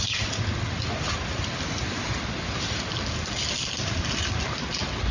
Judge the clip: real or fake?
real